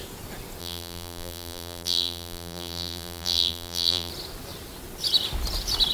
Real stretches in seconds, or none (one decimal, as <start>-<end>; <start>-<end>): 0.0-0.6; 4.1-5.9